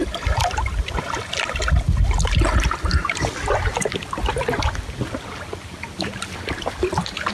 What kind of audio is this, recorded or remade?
recorded